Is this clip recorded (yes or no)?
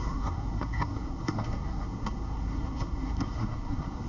no